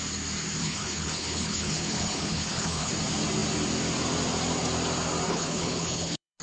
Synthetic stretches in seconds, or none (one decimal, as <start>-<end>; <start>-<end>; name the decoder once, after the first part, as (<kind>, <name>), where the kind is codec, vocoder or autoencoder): 0.6-2.9 (codec, HILCodec); 5.3-6.4

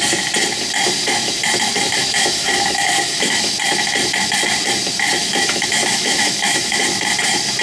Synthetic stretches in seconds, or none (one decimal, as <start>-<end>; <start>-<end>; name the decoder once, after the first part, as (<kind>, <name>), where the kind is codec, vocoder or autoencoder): 2.0-3.5 (autoencoder, DAC-VAE); 5.2-6.8

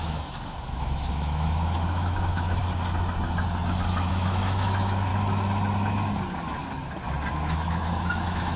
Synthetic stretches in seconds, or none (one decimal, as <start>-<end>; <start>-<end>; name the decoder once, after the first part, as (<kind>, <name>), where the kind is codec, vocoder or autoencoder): 0.0-2.6 (autoencoder, DAC-VAE); 4.1-5.1; 7.3-8.6

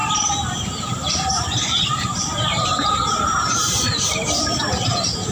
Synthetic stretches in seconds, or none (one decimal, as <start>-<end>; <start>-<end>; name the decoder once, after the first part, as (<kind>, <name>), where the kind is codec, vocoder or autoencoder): 0.0-5.3 (vocoder, BigVGAN v2)

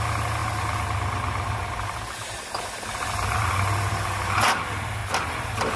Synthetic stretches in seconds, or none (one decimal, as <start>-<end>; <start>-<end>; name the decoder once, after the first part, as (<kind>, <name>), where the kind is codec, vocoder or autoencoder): none

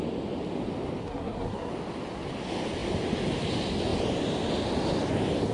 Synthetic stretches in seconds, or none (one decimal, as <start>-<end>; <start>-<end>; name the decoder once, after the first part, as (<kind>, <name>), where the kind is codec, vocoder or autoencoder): 1.0-1.7 (codec, SNAC)